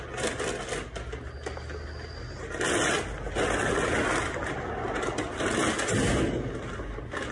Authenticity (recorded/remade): recorded